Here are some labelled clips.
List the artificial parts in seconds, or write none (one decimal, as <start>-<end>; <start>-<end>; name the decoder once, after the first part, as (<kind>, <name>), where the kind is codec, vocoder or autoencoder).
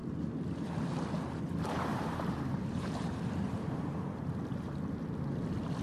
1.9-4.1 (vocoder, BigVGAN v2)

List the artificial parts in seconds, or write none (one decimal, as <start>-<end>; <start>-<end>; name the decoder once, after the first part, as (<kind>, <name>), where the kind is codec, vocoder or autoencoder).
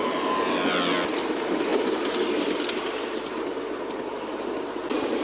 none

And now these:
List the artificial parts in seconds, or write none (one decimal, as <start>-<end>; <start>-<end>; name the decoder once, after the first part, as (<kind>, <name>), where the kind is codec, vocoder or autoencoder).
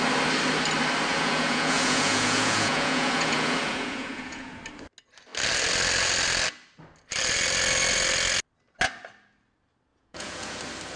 1.1-4.6 (vocoder, Vocos); 9.9-10.6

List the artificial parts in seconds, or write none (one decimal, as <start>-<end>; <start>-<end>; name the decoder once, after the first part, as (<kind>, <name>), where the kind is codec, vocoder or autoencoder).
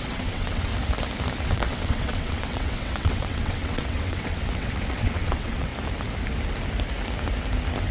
0.0-0.7 (vocoder, WaveNeXt); 1.4-5.7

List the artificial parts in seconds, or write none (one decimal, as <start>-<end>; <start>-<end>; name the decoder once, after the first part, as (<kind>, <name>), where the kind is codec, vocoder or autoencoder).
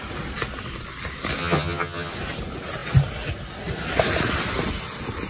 1.4-2.1 (vocoder, HiFi-GAN)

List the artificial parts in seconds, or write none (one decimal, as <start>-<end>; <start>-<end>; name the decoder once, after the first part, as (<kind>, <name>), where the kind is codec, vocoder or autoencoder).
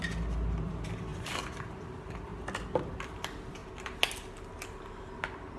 none